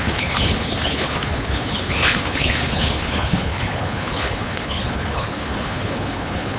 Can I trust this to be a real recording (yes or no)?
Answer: no